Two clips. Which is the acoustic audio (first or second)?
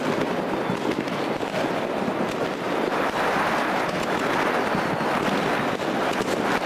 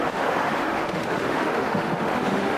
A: first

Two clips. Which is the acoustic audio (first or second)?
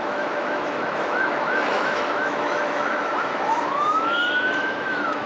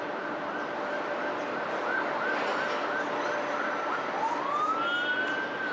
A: second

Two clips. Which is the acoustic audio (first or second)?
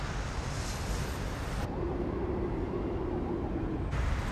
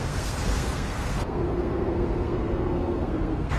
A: first